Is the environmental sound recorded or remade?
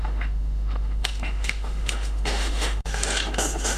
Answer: remade